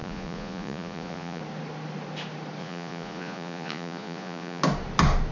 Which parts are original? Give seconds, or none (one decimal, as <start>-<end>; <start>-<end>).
1.4-2.6; 4.6-5.3